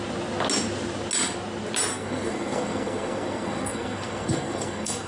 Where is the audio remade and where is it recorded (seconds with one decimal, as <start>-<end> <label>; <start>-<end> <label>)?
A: 0.0-1.9 recorded; 1.9-5.1 remade